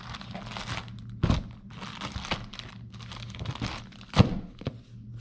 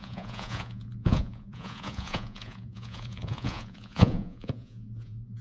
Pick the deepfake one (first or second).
second